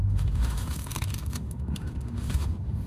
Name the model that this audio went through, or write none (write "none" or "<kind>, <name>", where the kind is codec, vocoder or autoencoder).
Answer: autoencoder, DAC-VAE